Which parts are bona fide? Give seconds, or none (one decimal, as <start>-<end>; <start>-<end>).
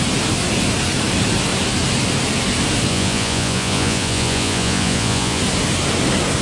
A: 0.0-2.9; 5.4-6.4